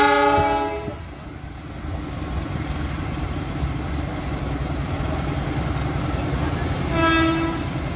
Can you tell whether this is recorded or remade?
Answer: recorded